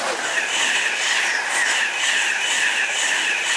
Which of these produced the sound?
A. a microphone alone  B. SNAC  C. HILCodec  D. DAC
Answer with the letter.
A